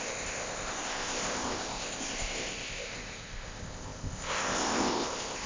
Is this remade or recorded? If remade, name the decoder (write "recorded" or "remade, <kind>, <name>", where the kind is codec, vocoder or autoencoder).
remade, codec, ZipCodec